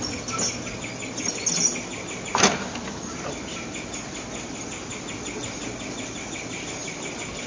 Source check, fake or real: real